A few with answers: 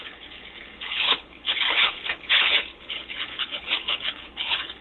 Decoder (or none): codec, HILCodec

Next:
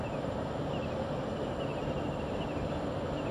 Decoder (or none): none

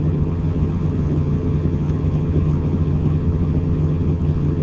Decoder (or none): vocoder, HiFi-GAN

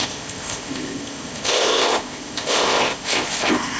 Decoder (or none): codec, ZipCodec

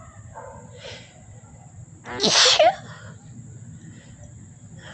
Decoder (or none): none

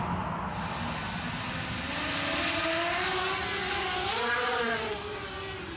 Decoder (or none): none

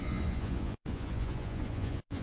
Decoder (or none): vocoder, Vocos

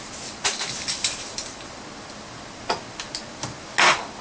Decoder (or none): none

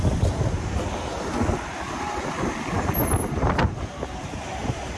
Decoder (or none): none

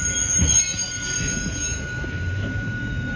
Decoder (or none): none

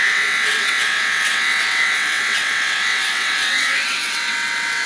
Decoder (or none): vocoder, WaveNeXt